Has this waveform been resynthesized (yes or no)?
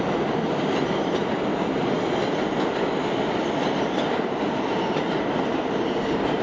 no